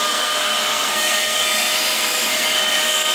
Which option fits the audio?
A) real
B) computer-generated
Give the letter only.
B